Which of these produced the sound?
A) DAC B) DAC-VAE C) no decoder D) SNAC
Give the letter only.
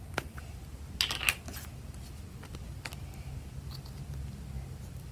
C